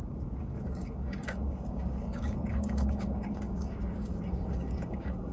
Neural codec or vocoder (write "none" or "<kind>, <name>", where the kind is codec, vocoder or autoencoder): codec, DAC